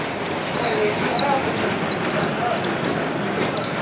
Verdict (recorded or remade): recorded